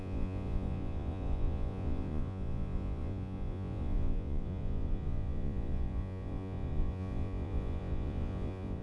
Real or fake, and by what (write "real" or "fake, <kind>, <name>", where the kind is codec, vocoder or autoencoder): fake, vocoder, Vocos